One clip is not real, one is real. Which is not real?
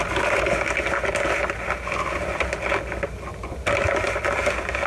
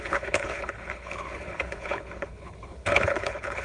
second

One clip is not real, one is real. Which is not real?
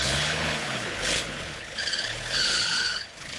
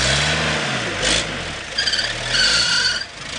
first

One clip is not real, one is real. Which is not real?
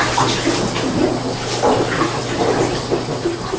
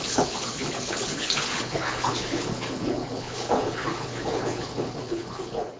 second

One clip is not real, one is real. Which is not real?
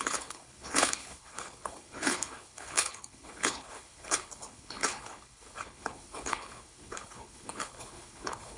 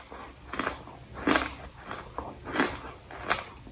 first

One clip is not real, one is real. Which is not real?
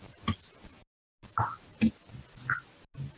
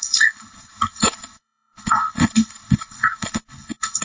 second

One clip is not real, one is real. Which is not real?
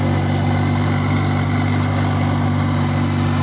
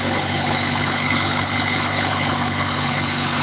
second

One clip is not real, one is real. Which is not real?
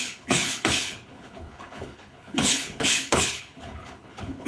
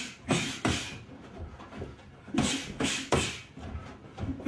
first